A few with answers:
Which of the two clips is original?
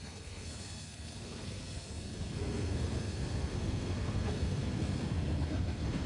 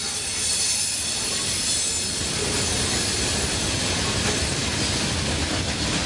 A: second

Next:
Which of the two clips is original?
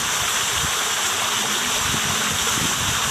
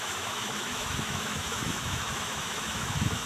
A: first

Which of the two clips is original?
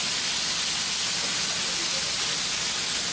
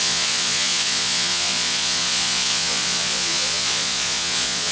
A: first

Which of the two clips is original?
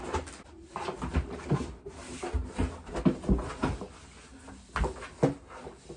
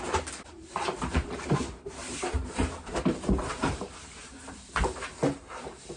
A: first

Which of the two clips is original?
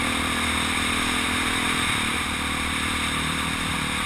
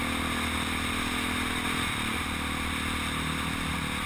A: second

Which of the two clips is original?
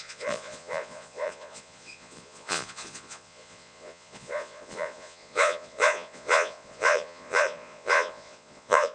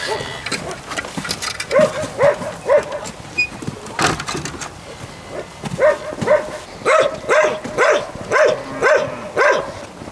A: second